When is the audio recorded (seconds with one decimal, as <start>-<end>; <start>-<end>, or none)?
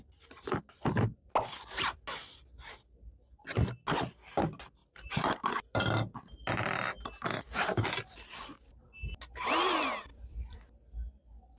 0.0-4.8; 5.8-10.1; 10.7-11.6